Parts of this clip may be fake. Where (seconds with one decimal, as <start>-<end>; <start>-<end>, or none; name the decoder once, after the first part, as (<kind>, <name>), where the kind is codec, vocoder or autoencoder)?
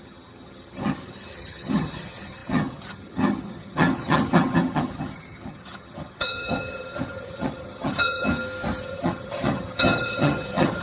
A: 0.0-8.3 (vocoder, HiFi-GAN); 8.8-10.8